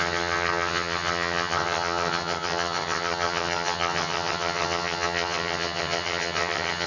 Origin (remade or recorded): remade